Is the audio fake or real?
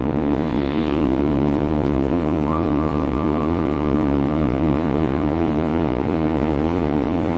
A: fake